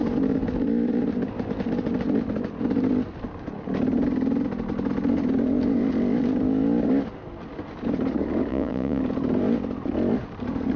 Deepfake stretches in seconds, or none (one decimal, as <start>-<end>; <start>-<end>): 8.5-9.0